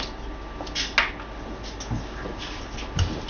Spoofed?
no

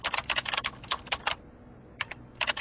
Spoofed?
no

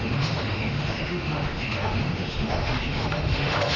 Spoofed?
yes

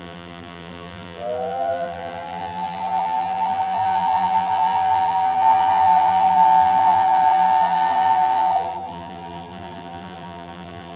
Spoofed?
yes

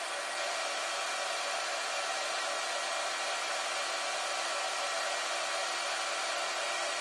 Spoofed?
no